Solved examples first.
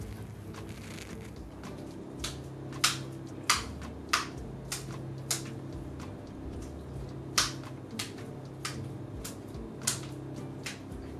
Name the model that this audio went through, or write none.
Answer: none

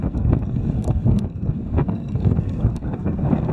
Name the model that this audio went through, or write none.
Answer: codec, SNAC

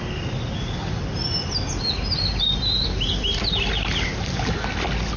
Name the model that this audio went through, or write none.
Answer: none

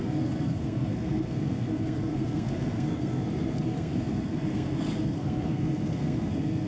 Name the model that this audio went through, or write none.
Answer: codec, SNAC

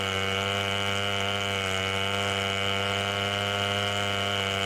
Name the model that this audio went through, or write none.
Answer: none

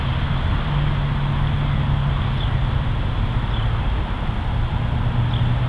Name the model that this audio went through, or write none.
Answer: none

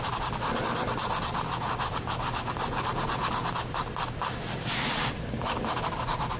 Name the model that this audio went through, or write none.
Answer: none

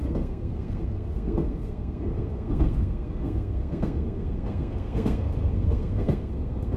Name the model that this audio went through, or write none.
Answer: codec, SNAC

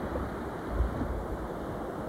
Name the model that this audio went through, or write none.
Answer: none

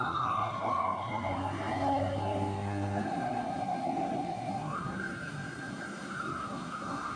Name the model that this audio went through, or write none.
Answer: codec, SNAC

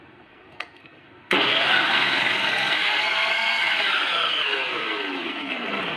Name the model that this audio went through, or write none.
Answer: codec, SNAC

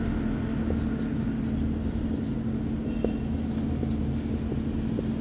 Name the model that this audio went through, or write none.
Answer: none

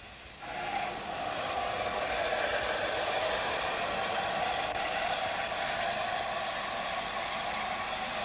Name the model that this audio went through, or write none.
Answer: none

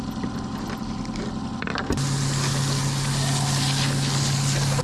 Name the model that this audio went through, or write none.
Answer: none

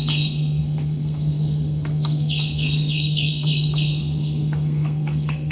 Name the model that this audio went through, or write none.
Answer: codec, SNAC